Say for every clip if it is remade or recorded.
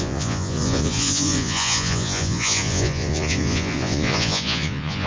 remade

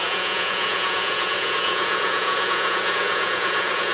remade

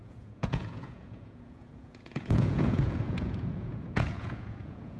remade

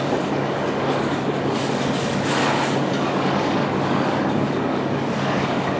remade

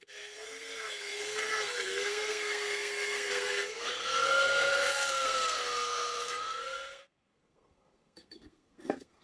remade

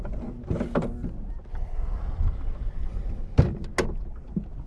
recorded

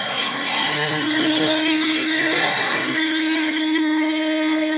remade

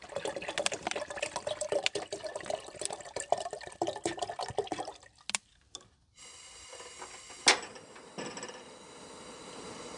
recorded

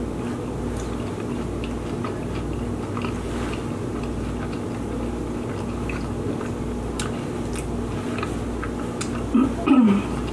recorded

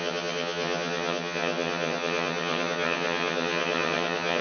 remade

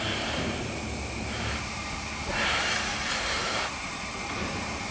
remade